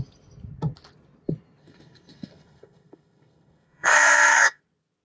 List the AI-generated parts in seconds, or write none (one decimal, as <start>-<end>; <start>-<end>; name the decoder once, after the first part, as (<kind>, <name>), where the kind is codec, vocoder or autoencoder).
1.6-4.6 (codec, SNAC)